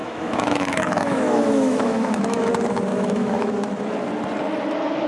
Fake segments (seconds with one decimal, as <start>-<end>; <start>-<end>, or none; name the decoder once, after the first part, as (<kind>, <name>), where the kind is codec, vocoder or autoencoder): 0.0-2.5 (autoencoder, DAC-VAE); 2.9-3.5

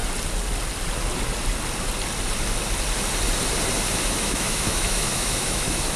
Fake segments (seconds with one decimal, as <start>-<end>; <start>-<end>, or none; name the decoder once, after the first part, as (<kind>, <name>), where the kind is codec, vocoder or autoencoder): 4.0-6.0 (autoencoder, DAC-VAE)

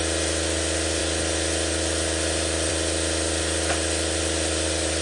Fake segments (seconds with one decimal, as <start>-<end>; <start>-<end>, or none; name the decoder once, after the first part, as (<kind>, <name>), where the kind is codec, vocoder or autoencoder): none

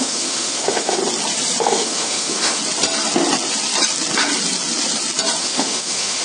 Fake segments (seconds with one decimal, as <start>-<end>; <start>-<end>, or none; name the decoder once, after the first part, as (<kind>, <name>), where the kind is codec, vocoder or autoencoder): 0.0-1.0 (autoencoder, DAC-VAE); 1.6-2.6; 5.4-6.2

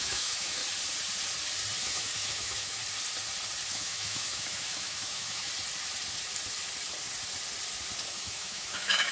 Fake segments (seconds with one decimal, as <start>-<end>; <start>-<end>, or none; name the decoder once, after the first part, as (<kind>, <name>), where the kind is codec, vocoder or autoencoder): 0.0-0.6 (autoencoder, DAC-VAE); 1.8-2.8; 3.7-5.5; 8.1-9.1

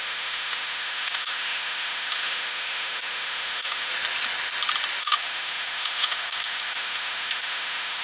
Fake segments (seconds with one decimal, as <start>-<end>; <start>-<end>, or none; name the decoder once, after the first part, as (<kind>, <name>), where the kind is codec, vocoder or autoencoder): 0.0-3.9 (autoencoder, DAC-VAE); 5.0-8.0

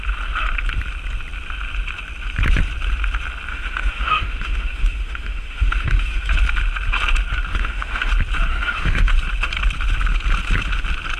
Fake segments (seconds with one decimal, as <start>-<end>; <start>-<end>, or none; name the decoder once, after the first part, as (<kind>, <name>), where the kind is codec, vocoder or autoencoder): 3.5-6.3 (autoencoder, DAC-VAE); 7.5-8.1; 8.5-9.1

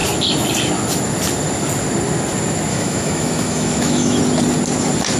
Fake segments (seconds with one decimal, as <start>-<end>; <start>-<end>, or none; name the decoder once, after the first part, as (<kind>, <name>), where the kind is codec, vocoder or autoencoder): 2.7-4.2 (autoencoder, DAC-VAE)